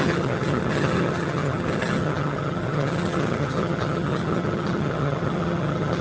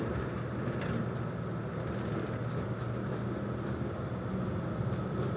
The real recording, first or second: second